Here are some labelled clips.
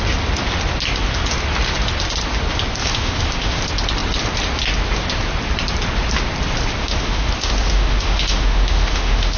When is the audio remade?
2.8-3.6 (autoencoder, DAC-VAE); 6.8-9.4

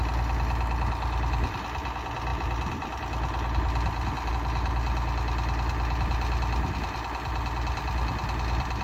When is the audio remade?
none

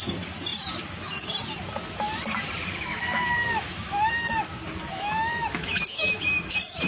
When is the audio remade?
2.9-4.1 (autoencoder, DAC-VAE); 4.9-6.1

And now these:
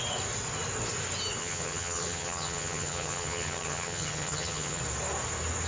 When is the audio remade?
1.4-4.8 (vocoder, HiFi-GAN)